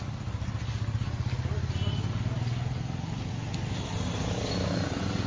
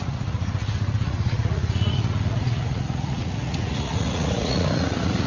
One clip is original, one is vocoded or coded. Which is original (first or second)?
first